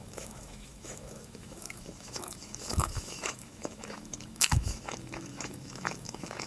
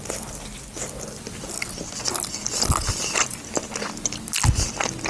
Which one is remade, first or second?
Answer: first